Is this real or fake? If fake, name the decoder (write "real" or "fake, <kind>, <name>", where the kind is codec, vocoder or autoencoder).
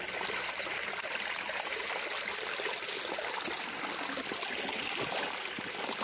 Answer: real